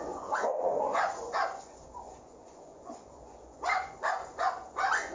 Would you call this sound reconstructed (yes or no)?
yes